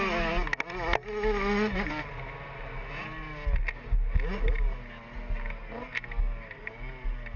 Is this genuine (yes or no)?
yes